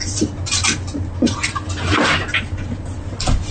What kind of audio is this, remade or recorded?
recorded